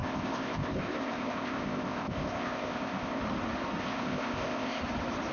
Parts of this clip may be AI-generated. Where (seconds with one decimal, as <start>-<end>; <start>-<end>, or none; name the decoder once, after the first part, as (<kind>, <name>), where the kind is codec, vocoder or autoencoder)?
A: 0.0-3.2 (codec, ZipCodec); 3.8-4.8